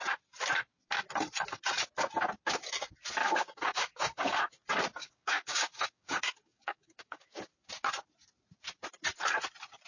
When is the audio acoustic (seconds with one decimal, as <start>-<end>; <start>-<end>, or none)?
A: 0.0-3.2; 4.6-5.0; 7.4-9.9